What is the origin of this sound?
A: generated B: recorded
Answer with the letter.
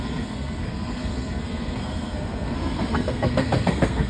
A